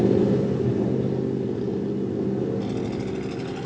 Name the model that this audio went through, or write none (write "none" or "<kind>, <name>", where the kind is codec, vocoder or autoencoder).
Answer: none